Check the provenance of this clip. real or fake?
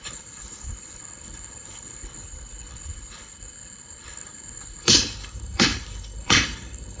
fake